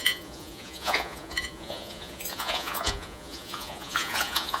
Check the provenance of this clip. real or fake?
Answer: fake